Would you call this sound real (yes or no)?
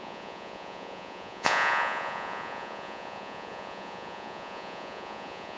no